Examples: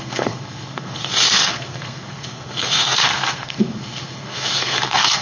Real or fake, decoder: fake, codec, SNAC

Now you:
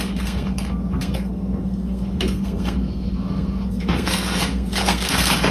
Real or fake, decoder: fake, codec, SNAC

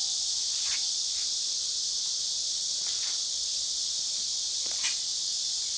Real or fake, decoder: real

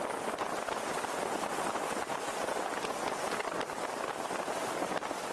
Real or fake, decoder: real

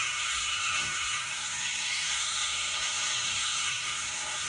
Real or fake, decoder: fake, codec, SNAC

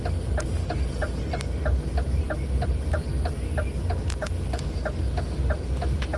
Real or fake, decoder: real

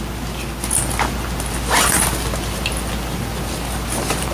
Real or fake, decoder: real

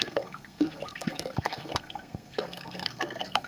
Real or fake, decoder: fake, codec, SNAC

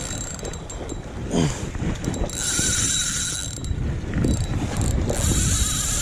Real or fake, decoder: real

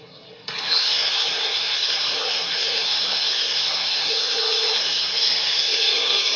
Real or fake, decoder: fake, codec, SNAC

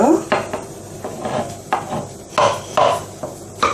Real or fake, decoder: real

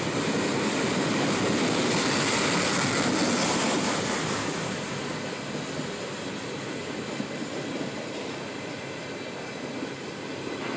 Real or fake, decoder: real